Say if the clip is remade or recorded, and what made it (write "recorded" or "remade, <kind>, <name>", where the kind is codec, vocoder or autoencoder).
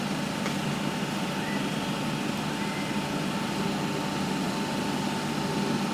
recorded